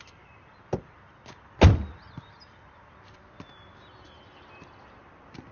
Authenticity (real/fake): real